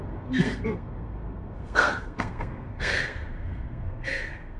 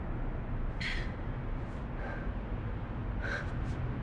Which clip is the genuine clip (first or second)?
second